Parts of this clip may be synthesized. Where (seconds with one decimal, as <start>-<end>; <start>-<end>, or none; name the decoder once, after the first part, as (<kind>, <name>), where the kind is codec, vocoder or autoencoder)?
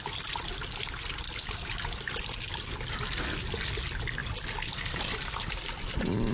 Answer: none